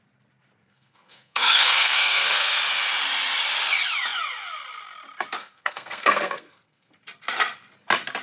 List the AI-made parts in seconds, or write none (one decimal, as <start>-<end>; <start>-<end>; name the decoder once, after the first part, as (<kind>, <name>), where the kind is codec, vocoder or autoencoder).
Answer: 0.6-2.6 (codec, SNAC); 5.4-6.9